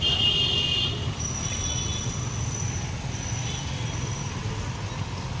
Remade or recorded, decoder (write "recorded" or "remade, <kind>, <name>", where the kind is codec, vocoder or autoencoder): recorded